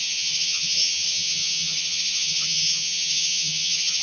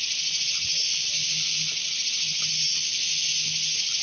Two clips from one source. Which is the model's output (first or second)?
first